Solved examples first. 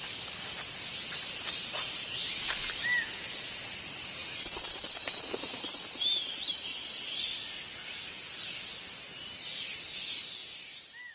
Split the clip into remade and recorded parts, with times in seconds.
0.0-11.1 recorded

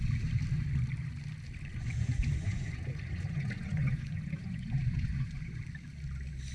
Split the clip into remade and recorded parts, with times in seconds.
0.0-1.7 recorded; 1.7-5.6 remade; 5.6-6.5 recorded